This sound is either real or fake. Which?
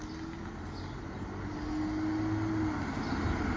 real